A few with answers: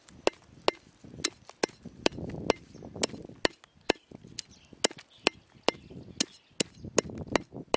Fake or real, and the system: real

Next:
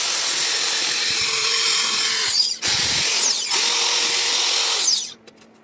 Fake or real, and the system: real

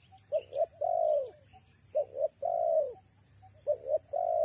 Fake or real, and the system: fake, vocoder, BigVGAN v2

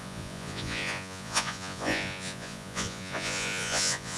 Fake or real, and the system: fake, vocoder, Vocos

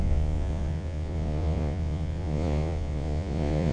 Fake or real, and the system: fake, vocoder, Vocos